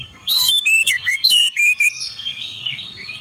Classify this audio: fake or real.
fake